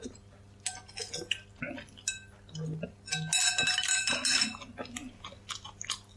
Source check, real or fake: real